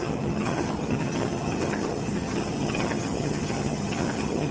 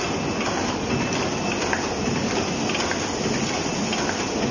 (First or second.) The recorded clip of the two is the second